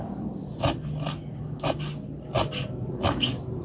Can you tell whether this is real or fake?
real